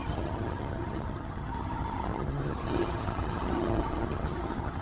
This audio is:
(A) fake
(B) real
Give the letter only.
A